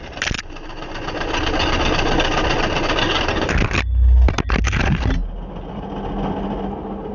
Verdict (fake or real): real